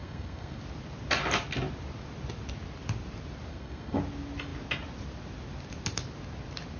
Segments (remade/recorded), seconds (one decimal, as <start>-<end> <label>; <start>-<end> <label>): 0.0-0.6 remade; 0.6-3.5 recorded; 3.5-4.0 remade; 4.0-6.8 recorded